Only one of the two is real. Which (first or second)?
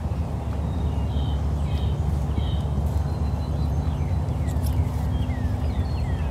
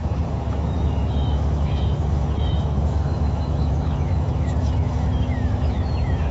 first